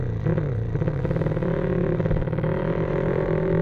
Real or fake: fake